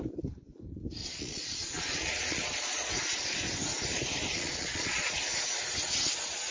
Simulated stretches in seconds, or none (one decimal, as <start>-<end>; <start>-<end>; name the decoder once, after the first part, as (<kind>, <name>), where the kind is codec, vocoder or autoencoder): 1.0-2.9 (vocoder, Vocos); 4.3-5.4